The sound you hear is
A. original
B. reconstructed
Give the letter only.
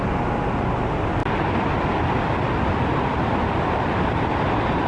A